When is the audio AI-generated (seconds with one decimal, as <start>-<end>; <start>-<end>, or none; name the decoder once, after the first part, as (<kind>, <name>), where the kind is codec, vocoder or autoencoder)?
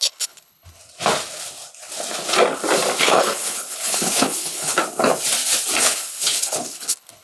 0.0-0.8 (codec, HILCodec); 3.0-4.8; 5.8-7.2